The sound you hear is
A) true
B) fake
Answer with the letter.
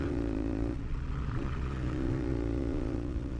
B